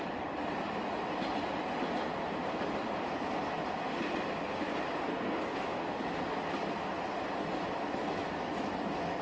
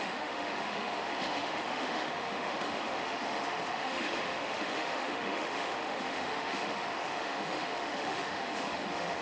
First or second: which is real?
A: first